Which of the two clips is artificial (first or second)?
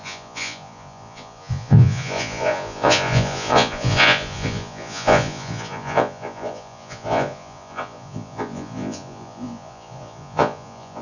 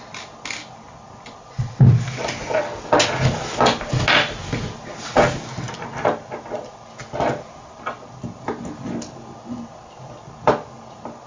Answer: first